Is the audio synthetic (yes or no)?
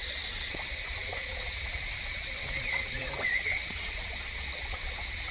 yes